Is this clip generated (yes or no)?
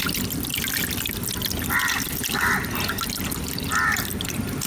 no